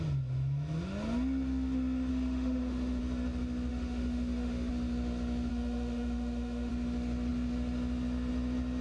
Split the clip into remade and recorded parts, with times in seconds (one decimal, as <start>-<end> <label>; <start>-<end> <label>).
0.0-2.1 recorded; 2.1-3.0 remade; 3.0-3.7 recorded; 3.7-4.7 remade; 4.7-5.5 recorded; 5.5-6.7 remade; 6.7-8.8 recorded